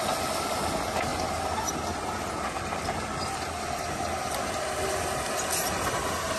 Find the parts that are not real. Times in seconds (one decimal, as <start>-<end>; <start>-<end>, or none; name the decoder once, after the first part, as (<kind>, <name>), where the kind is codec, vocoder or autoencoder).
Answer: none